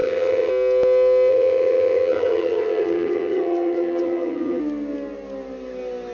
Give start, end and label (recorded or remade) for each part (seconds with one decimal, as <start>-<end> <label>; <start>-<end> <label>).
0.0-0.5 remade; 0.5-1.3 recorded; 1.3-4.6 remade; 4.6-6.1 recorded